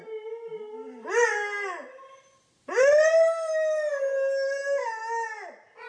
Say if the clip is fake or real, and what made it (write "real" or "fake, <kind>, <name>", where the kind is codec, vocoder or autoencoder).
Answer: real